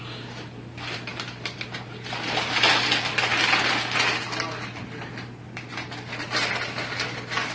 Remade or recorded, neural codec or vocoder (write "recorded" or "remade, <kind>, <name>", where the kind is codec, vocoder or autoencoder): recorded